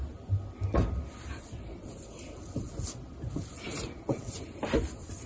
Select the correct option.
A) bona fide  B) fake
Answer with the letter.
A